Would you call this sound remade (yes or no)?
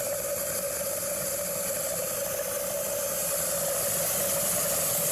no